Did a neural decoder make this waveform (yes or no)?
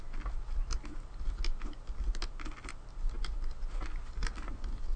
no